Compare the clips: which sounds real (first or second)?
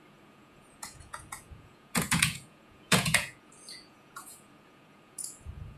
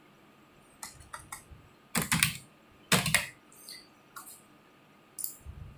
second